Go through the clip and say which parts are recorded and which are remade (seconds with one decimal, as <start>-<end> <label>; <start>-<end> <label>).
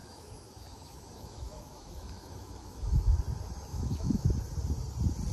0.0-3.2 remade; 3.2-3.7 recorded; 3.7-4.3 remade; 4.3-5.3 recorded